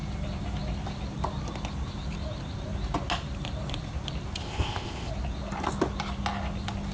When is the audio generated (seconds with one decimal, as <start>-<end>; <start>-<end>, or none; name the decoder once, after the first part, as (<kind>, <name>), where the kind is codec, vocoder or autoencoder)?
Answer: 4.4-5.1 (codec, ZipCodec)